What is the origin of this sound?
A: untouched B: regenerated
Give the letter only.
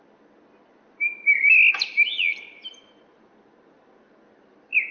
A